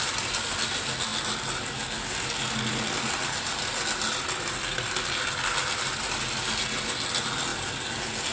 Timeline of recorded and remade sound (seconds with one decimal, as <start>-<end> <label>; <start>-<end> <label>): 0.0-8.3 recorded